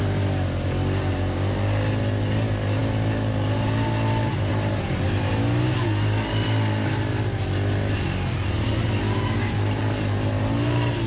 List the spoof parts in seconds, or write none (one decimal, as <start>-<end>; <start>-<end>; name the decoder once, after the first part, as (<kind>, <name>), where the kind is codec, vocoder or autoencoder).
none